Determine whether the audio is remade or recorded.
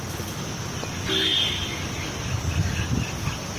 recorded